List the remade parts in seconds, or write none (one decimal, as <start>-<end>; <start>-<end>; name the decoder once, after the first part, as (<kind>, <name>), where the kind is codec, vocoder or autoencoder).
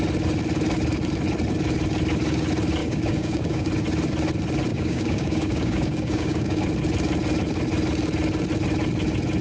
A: 2.8-3.7 (codec, DAC); 4.7-6.6